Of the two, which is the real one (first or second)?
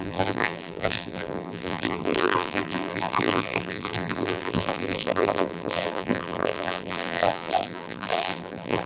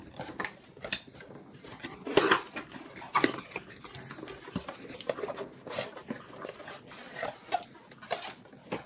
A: second